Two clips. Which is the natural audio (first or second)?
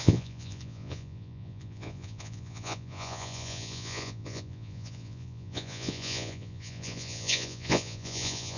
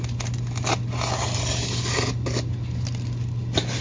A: second